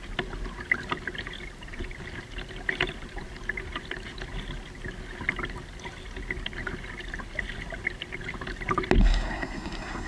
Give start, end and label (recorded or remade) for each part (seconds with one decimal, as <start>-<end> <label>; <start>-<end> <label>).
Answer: 0.0-9.0 recorded; 9.0-10.1 remade